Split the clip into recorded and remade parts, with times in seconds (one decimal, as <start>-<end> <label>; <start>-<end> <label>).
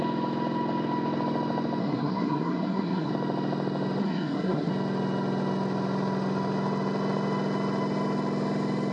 0.0-1.8 recorded; 1.8-3.1 remade; 3.1-4.0 recorded; 4.0-4.7 remade; 4.7-8.9 recorded